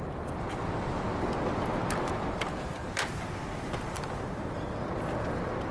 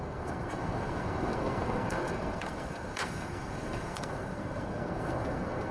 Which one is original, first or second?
first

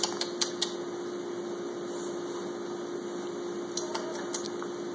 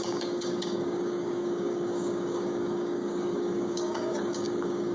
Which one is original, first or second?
first